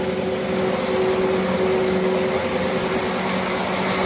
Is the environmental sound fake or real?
real